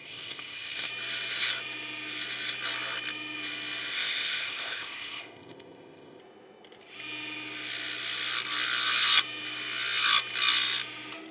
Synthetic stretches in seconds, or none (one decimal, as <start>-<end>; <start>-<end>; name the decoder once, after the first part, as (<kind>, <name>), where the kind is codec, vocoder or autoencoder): 0.0-0.9 (codec, ZipCodec); 3.9-6.2